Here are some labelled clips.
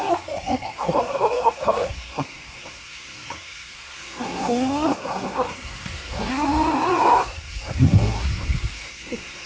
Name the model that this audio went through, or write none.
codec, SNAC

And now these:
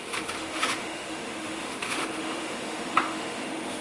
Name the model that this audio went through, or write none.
autoencoder, DAC-VAE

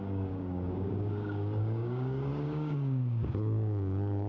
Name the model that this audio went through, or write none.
codec, DAC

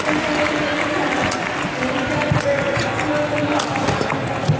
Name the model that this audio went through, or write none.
none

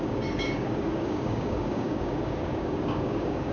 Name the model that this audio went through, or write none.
codec, DAC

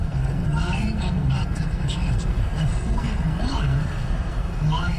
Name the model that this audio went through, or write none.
codec, SNAC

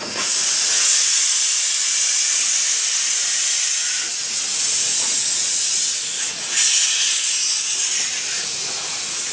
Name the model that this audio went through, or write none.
vocoder, Vocos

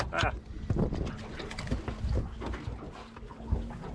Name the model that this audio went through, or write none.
none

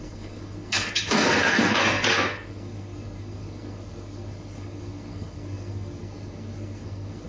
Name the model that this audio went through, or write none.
codec, SNAC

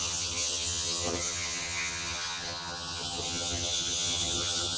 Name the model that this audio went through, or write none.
vocoder, HiFi-GAN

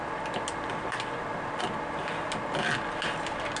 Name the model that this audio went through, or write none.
none